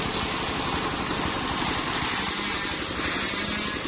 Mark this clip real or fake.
real